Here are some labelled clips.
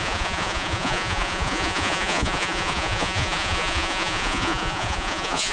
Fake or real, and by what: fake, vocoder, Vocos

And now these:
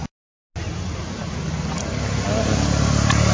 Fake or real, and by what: real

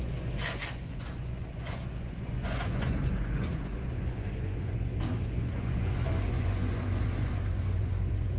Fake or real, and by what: fake, vocoder, Vocos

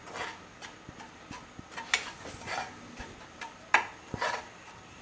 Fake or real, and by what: real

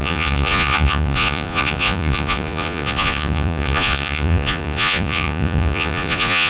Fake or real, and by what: fake, vocoder, Vocos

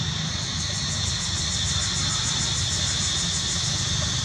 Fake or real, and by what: real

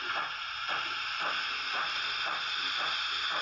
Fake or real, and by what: real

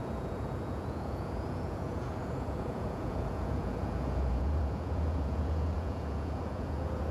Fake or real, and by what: fake, vocoder, Vocos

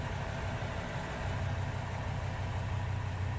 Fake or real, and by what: real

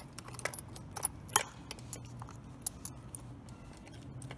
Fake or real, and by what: real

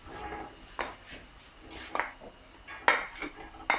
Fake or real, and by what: real